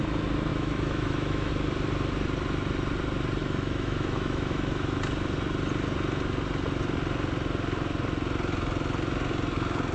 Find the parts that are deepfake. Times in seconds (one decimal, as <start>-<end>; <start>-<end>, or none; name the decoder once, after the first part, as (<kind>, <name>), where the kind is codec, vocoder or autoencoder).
0.5-1.5 (autoencoder, DAC-VAE); 3.4-5.0